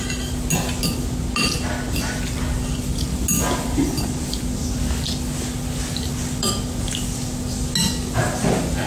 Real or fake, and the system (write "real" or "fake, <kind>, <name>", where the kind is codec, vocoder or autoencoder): real